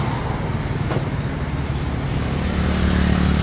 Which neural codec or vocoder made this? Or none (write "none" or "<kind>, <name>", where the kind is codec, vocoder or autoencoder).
none